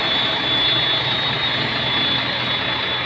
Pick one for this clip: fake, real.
real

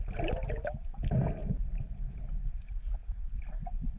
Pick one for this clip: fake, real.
real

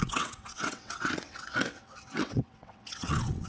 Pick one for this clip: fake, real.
fake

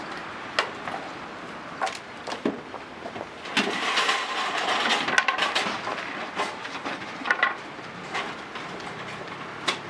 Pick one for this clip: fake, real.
real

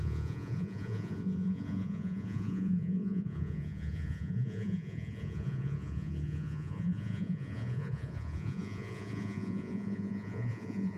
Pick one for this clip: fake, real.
fake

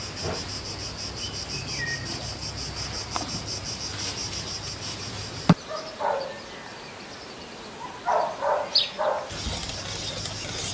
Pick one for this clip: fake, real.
real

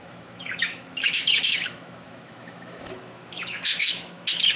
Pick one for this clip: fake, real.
fake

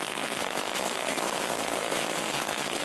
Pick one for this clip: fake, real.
fake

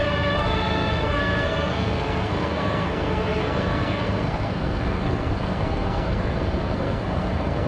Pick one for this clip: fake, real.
fake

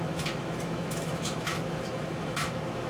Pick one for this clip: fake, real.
fake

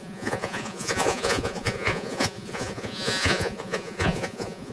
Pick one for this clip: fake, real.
fake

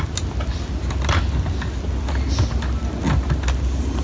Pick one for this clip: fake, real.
real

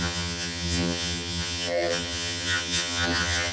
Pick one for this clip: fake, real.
fake